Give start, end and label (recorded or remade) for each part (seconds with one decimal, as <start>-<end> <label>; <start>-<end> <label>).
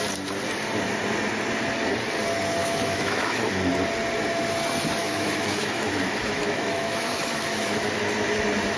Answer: 0.0-2.6 recorded; 2.6-3.5 remade; 3.5-5.0 recorded; 5.0-8.0 remade; 8.0-8.8 recorded